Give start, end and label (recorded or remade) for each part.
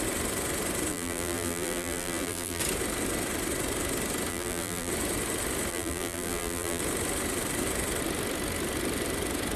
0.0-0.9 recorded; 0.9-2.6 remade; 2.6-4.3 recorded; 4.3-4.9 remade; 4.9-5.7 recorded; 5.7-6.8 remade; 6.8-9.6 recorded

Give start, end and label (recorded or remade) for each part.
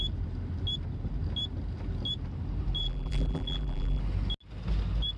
0.0-2.8 recorded; 2.8-4.0 remade; 4.0-5.2 recorded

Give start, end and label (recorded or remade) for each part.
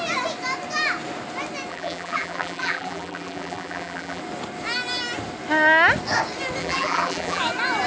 0.0-1.7 recorded; 1.7-4.2 remade; 4.2-6.6 recorded; 6.6-7.4 remade; 7.4-7.9 recorded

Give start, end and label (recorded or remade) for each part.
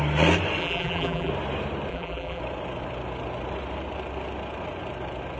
0.0-0.6 recorded; 0.6-1.3 remade; 1.3-1.9 recorded; 1.9-2.4 remade; 2.4-5.4 recorded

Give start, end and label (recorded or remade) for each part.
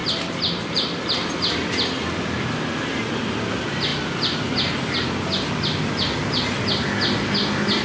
0.0-7.8 recorded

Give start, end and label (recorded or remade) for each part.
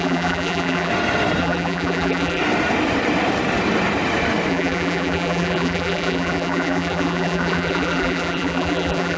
0.0-0.9 remade; 0.9-1.4 recorded; 1.4-2.4 remade; 2.4-4.5 recorded; 4.5-9.2 remade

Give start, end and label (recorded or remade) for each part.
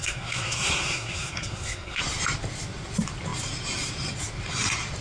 0.0-2.0 remade; 2.0-5.0 recorded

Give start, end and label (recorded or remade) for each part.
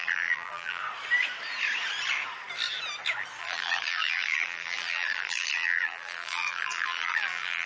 0.0-0.8 remade; 0.8-3.4 recorded; 3.4-7.7 remade